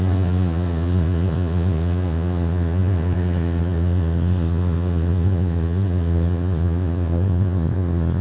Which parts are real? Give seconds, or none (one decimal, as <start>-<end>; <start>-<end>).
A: none